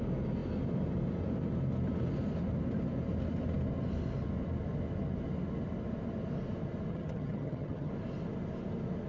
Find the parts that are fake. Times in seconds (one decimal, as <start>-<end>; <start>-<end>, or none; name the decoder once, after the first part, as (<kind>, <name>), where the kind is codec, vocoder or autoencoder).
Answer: 6.9-7.9 (vocoder, HiFi-GAN)